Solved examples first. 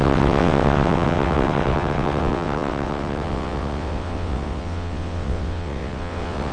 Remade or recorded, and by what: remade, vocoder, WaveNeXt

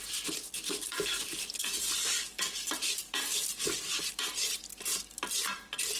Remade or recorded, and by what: remade, vocoder, BigVGAN v2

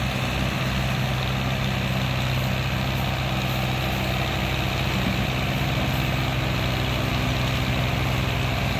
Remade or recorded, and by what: recorded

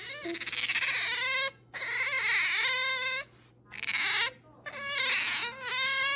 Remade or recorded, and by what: recorded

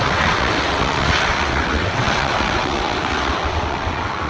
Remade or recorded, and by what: remade, vocoder, WaveNeXt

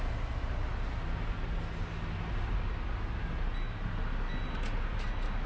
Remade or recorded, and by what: recorded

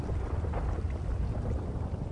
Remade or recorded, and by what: recorded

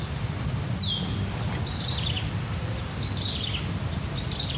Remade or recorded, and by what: recorded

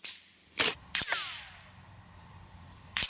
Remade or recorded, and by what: remade, vocoder, BigVGAN v2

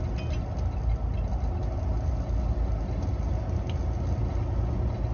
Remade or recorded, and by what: recorded